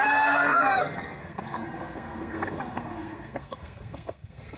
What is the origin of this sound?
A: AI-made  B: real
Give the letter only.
A